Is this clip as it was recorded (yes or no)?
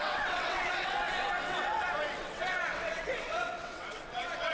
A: no